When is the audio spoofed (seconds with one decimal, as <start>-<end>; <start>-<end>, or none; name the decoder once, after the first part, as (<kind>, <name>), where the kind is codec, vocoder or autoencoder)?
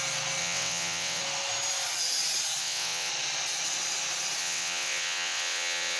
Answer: 0.4-1.2 (vocoder, WaveNeXt); 2.6-3.1; 4.4-6.0